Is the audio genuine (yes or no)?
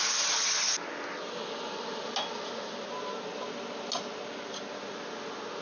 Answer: yes